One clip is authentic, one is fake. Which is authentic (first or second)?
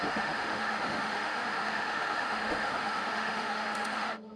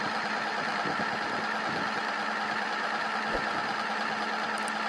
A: second